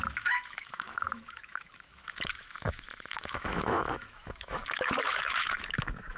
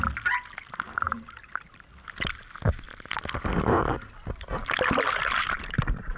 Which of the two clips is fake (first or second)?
first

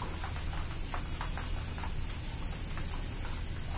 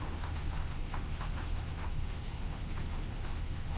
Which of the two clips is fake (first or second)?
second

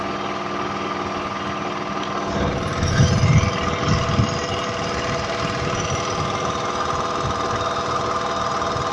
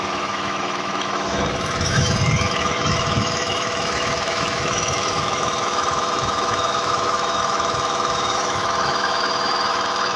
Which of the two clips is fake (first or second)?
second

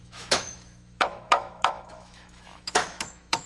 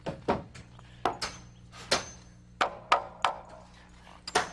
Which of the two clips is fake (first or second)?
first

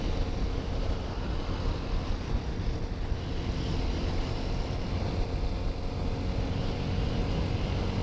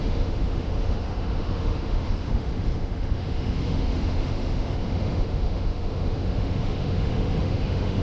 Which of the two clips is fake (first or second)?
second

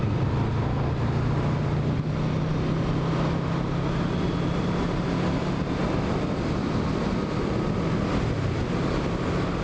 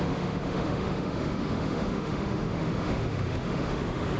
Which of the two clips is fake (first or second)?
second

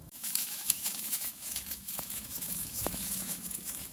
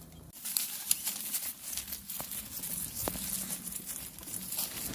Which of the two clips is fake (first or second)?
first